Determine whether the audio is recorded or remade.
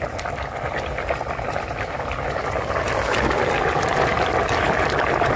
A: remade